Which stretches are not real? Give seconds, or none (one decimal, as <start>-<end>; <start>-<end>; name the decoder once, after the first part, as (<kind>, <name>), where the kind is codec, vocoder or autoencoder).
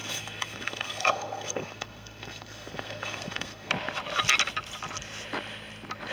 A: 0.0-3.7 (codec, SNAC)